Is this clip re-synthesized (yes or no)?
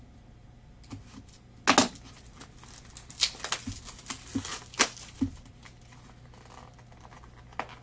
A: no